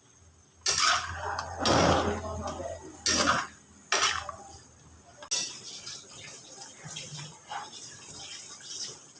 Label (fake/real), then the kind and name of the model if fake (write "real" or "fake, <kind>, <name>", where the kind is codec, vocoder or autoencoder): real